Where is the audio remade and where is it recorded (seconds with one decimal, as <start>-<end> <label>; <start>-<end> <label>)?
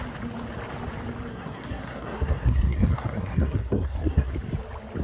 0.0-1.3 recorded; 1.3-4.3 remade; 4.3-5.0 recorded